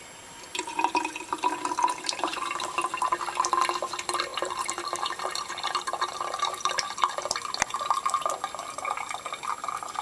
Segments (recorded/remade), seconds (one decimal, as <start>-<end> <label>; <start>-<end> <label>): 0.0-0.5 recorded; 0.5-2.9 remade; 2.9-4.3 recorded; 4.3-6.7 remade; 6.7-10.0 recorded